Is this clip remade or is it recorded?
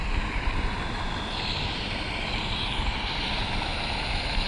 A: remade